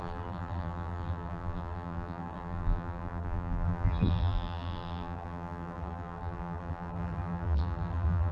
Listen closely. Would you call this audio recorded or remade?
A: remade